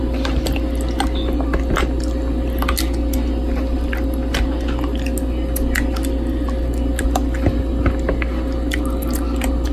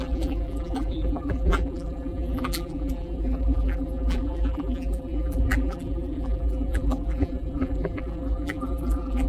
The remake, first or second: second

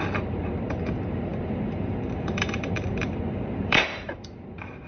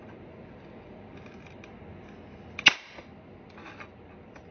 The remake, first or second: first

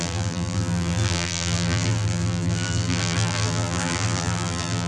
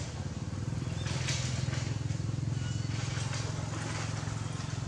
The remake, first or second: first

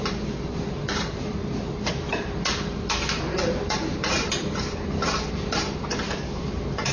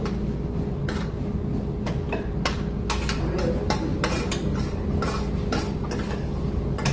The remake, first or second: first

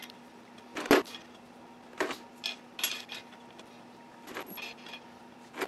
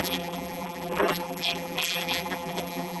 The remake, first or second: second